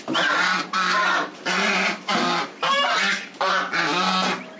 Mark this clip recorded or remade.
recorded